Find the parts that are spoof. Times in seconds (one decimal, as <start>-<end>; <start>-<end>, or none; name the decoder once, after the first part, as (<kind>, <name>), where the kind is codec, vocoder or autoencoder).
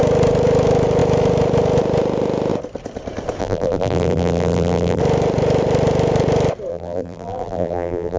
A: 3.4-5.0 (vocoder, BigVGAN v2); 6.7-8.2